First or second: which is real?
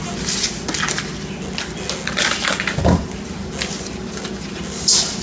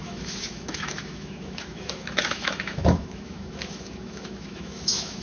first